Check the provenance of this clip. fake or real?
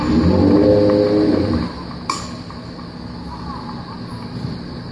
real